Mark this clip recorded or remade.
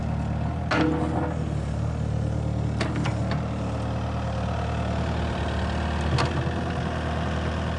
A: recorded